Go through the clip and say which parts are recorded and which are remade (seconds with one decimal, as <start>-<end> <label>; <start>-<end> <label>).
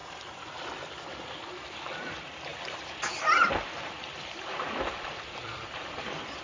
0.0-0.9 remade; 0.9-2.5 recorded; 2.5-6.4 remade